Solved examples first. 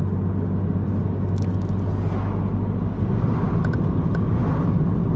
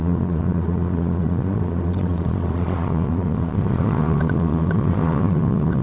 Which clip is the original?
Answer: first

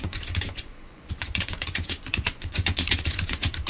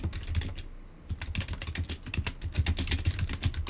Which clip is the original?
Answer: second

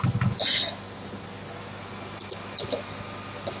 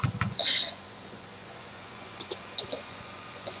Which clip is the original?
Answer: first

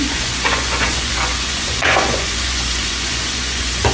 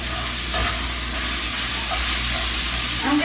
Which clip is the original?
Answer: second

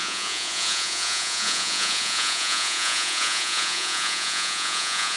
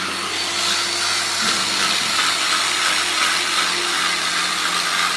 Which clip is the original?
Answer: second